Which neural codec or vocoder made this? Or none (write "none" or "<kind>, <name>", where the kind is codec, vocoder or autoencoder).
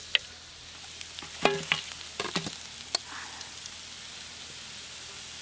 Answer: none